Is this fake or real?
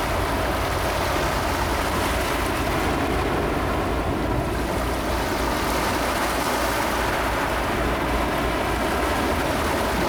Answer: real